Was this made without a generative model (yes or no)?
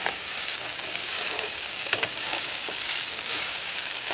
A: no